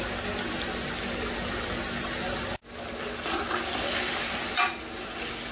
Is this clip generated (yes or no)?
no